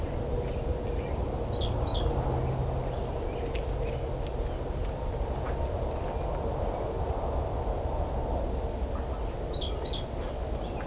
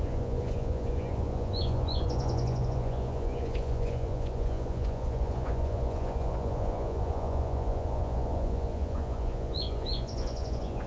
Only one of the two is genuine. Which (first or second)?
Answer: first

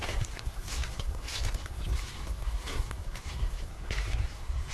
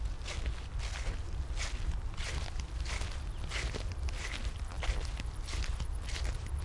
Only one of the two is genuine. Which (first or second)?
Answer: second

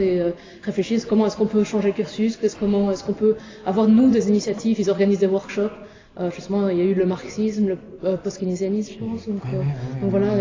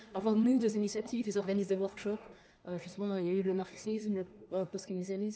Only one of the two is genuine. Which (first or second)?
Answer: first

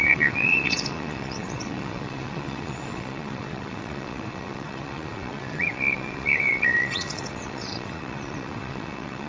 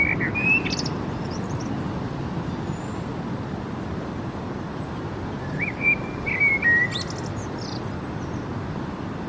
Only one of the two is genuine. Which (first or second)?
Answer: second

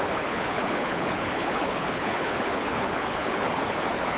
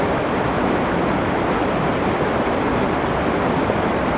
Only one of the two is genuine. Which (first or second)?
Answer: second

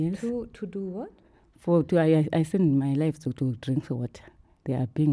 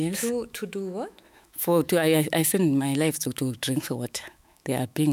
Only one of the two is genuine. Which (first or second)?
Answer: first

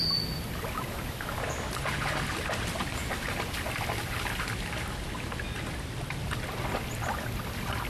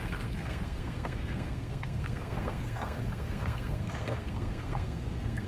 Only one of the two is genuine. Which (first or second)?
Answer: first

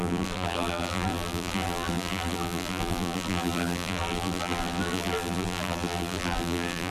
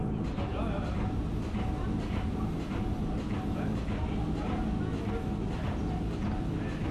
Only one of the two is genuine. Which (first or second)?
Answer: second